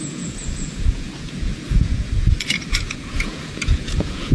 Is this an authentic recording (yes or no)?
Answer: no